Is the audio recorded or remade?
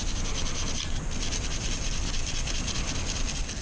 recorded